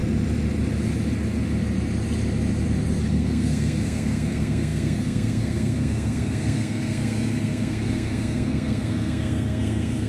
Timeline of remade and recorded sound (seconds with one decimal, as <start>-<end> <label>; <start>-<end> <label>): 0.0-3.0 recorded; 3.0-10.1 remade